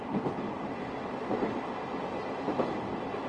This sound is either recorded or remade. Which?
recorded